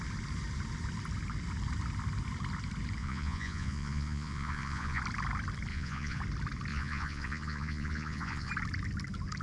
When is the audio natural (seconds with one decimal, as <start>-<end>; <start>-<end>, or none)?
0.0-3.0; 5.0-5.7; 6.2-6.7; 8.5-9.4